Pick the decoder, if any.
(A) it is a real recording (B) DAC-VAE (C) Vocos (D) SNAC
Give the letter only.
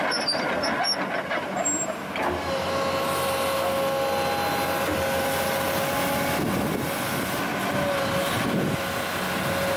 A